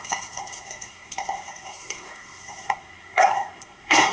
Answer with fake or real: fake